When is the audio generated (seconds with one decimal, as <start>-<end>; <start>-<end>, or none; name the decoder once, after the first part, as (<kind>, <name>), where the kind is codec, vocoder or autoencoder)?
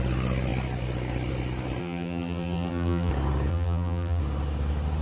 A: 1.8-3.1 (vocoder, BigVGAN v2); 3.5-4.2